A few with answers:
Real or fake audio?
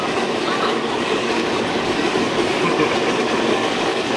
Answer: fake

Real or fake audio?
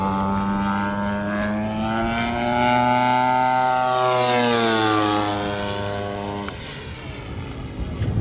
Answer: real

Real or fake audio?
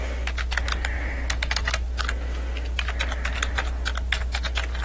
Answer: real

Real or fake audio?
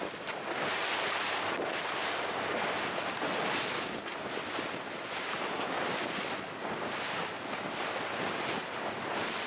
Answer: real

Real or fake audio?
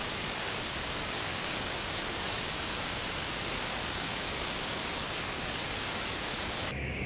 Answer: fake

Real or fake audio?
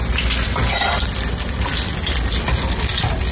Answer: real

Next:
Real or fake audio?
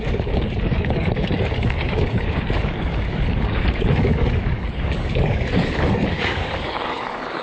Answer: fake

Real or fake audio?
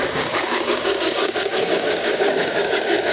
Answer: fake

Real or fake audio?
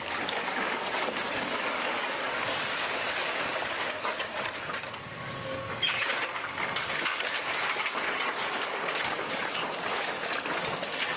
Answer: fake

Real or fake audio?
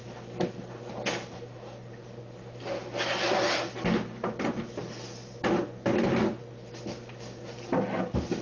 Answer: real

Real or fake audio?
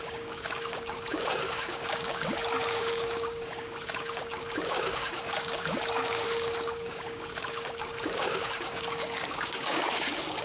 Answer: fake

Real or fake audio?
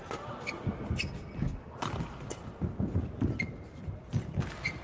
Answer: real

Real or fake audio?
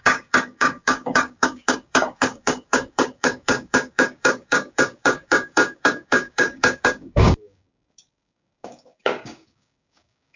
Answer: fake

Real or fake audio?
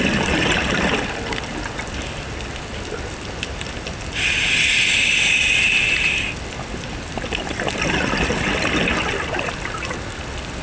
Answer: real